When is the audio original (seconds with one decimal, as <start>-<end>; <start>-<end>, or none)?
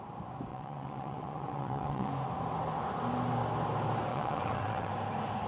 0.0-0.5; 2.1-4.1; 4.9-5.5